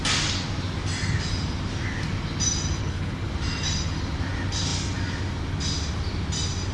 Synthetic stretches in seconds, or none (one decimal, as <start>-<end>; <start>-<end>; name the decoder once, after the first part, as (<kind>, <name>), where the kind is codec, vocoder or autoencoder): 2.8-3.3 (codec, HILCodec)